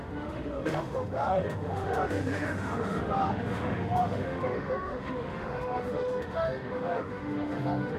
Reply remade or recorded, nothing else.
remade